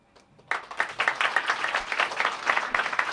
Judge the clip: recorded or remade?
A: recorded